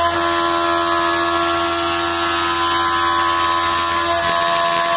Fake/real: real